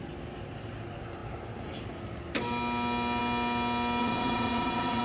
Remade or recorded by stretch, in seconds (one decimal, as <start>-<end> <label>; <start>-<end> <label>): 0.0-4.0 recorded; 4.0-5.0 remade